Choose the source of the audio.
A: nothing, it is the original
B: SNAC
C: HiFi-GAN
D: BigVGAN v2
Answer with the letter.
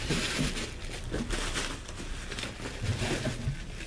A